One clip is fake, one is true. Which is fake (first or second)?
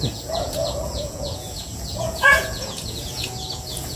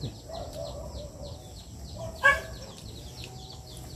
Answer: first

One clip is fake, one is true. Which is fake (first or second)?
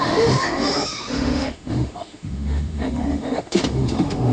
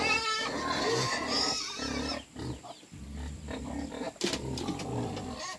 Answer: first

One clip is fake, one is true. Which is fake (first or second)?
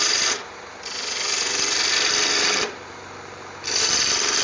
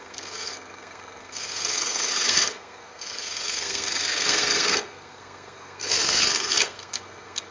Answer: second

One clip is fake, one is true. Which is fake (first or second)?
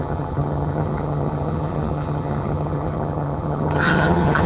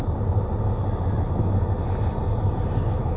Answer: first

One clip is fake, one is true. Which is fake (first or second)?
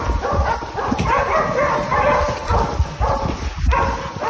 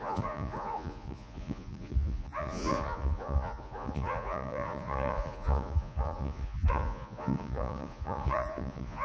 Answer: second